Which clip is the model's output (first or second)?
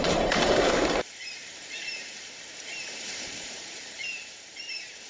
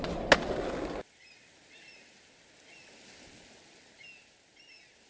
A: first